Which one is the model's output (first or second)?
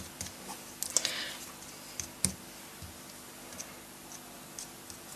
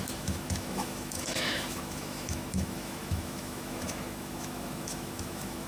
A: second